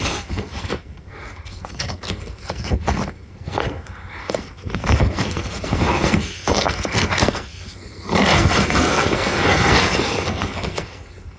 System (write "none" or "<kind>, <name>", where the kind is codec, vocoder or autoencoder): codec, SNAC